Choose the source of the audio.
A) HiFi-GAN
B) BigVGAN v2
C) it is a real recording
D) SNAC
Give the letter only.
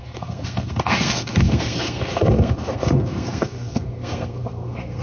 D